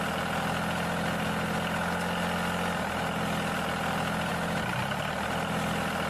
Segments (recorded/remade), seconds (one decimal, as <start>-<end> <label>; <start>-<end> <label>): 0.0-4.3 recorded; 4.3-6.1 remade